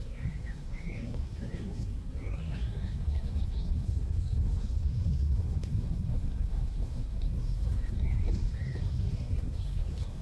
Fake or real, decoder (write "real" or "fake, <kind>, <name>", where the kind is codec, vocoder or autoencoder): fake, codec, SNAC